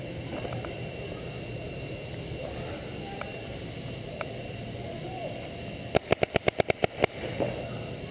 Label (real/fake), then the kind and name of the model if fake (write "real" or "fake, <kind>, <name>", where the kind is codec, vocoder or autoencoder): fake, vocoder, BigVGAN v2